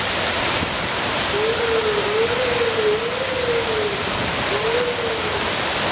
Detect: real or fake real